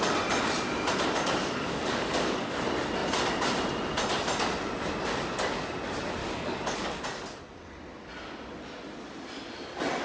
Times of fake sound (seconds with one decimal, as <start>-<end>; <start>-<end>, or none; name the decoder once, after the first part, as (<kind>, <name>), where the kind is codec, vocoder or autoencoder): 1.4-2.6 (codec, DAC); 6.2-7.0